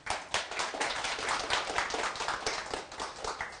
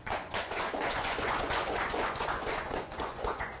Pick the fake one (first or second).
second